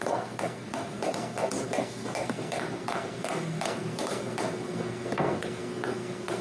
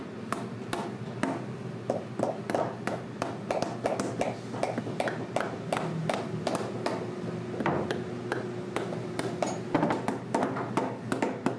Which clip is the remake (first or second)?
first